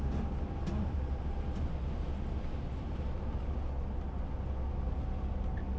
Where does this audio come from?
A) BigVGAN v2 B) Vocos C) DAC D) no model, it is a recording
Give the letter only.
D